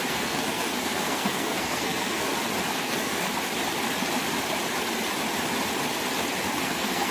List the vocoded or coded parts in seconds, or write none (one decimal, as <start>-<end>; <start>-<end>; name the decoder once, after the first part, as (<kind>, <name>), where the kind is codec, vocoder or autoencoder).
0.0-2.3 (codec, SNAC); 2.8-3.3; 6.6-7.1